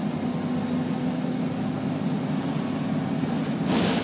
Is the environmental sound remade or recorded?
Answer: recorded